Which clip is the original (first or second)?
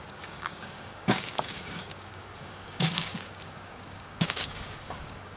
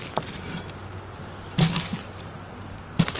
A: second